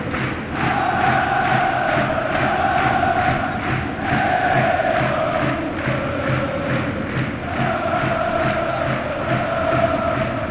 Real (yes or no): yes